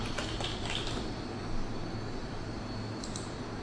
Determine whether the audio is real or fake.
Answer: real